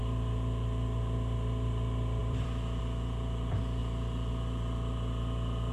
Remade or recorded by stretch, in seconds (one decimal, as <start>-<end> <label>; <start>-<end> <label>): 0.0-2.2 recorded; 2.2-2.8 remade; 2.8-5.7 recorded